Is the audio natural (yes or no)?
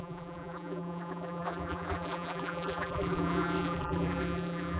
no